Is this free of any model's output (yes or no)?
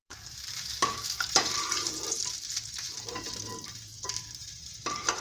no